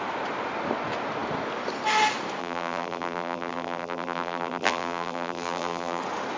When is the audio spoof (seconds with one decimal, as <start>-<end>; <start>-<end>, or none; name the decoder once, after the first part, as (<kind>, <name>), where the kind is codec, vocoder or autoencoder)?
2.4-6.0 (vocoder, BigVGAN v2)